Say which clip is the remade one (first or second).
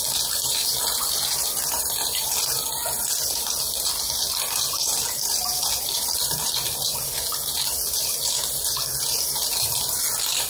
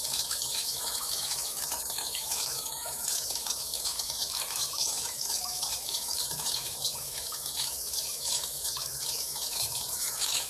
second